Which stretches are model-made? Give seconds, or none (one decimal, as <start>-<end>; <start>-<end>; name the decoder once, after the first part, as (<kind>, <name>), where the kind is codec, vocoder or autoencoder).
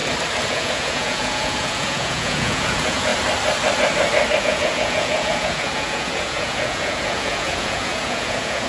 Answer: 0.5-3.1 (vocoder, Vocos); 4.4-8.7